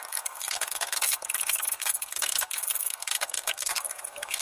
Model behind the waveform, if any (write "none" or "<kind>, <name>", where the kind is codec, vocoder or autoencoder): codec, SNAC